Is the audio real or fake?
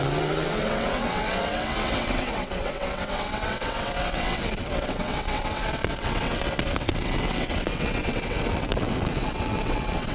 fake